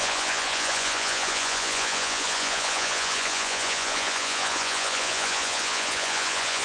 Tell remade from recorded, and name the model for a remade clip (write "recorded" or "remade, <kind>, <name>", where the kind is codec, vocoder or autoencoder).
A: remade, vocoder, Vocos